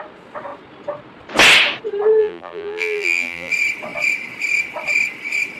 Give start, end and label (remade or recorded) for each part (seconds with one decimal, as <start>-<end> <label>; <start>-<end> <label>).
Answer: 0.0-2.2 recorded; 2.2-3.5 remade; 3.5-5.6 recorded